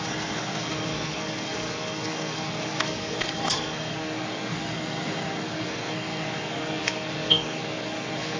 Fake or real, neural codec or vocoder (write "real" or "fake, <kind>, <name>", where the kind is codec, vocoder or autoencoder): fake, codec, SNAC